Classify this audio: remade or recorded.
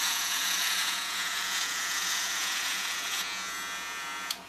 remade